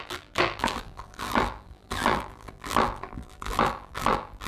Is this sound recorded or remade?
remade